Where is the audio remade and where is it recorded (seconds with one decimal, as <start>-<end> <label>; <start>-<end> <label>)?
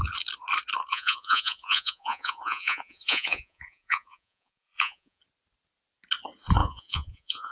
0.0-0.9 recorded; 0.9-5.2 remade; 5.2-6.6 recorded; 6.6-7.5 remade